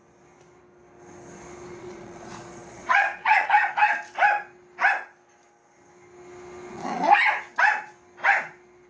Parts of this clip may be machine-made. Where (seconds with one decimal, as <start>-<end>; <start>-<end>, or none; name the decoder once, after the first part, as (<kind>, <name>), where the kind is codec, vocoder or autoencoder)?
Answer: 1.7-3.7 (vocoder, Vocos); 6.7-7.3